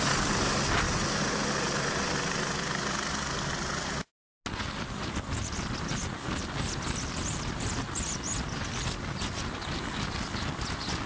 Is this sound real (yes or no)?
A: yes